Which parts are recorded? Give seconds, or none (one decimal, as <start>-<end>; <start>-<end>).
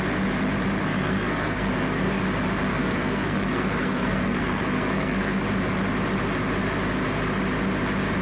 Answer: 0.0-0.8; 2.2-2.7; 5.4-8.2